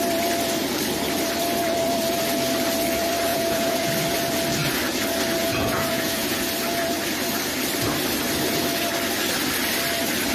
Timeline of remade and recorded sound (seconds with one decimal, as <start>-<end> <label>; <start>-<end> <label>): 0.0-3.3 recorded; 3.3-3.9 remade; 3.9-5.4 recorded; 5.4-6.4 remade; 6.4-10.3 recorded